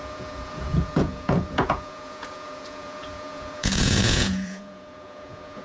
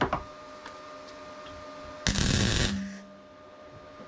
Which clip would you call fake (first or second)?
first